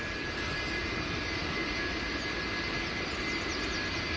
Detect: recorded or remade recorded